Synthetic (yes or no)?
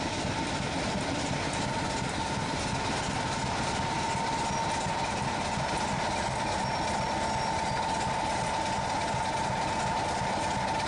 no